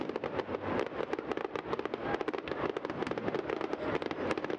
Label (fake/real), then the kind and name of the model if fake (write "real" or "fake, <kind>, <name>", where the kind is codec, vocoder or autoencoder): real